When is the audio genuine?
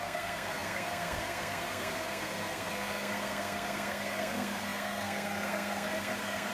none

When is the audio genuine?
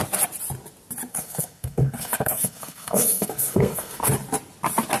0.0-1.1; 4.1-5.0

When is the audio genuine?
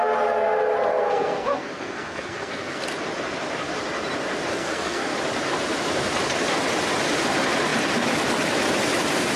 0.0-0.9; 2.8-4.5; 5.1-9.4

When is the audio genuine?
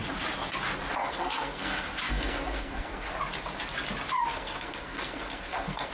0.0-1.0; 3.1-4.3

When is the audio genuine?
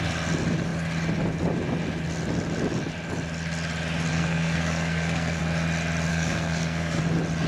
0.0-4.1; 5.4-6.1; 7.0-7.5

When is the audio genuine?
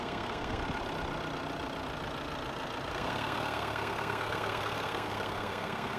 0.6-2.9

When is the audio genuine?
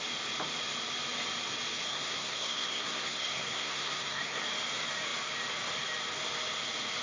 0.0-1.9; 4.4-7.0